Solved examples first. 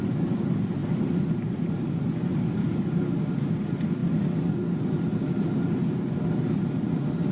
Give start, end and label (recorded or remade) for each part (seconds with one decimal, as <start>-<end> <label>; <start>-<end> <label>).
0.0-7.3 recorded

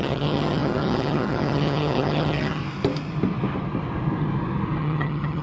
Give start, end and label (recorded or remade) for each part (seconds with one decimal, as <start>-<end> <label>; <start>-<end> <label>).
0.0-2.6 remade; 2.6-4.8 recorded; 4.8-5.4 remade

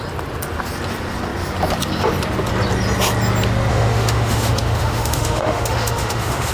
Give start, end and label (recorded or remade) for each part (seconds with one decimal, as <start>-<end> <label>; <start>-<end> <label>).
0.0-3.7 recorded; 3.7-6.5 remade

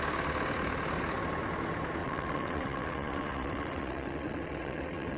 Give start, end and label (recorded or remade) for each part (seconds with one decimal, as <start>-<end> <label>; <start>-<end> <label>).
0.0-2.0 recorded; 2.0-5.2 remade

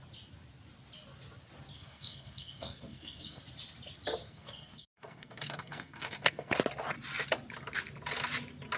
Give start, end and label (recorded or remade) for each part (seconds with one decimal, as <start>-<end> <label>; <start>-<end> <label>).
0.0-1.7 recorded; 1.7-3.4 remade; 3.4-4.2 recorded; 4.2-6.5 remade; 6.5-8.8 recorded